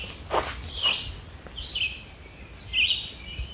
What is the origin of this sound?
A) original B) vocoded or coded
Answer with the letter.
A